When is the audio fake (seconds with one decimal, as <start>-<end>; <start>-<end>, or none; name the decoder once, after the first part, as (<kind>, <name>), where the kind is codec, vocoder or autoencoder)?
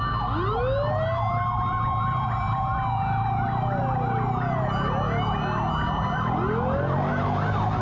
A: none